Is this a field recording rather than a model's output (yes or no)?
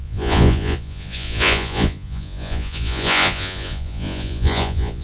no